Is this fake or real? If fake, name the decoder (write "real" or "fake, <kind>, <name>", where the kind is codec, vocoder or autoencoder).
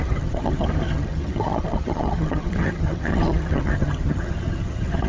fake, vocoder, HiFi-GAN